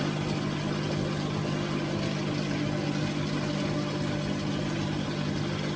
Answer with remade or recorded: recorded